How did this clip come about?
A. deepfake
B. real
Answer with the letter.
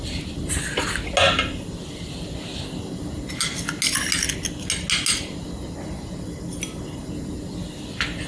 B